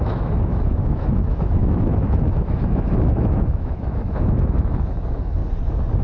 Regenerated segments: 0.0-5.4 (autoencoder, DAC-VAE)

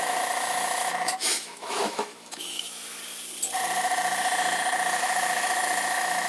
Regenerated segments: 0.0-3.0 (autoencoder, DAC-VAE); 5.0-6.3

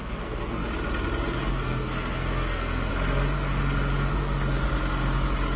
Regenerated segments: 0.0-0.6 (codec, SNAC); 1.5-2.9

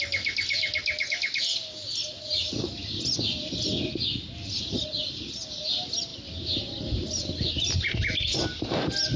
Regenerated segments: none

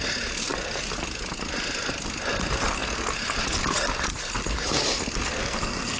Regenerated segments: 5.4-6.0 (codec, SNAC)

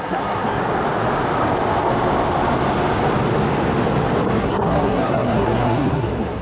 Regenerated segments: 0.0-0.6 (codec, SNAC); 4.4-6.4

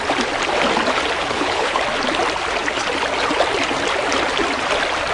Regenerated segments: 1.2-1.8 (codec, HILCodec)

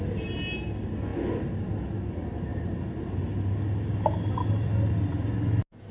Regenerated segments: 2.5-3.1 (vocoder, BigVGAN v2)